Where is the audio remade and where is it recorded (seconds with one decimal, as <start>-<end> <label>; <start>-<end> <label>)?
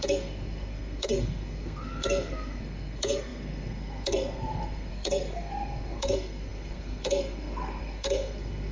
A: 0.0-8.7 remade